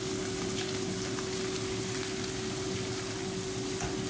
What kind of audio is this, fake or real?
real